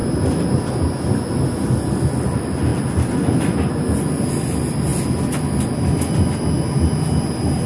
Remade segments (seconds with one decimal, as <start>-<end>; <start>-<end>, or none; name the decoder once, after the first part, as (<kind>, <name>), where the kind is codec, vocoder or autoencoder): none